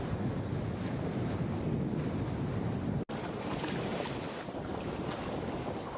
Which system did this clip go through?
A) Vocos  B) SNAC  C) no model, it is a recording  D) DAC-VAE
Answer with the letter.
C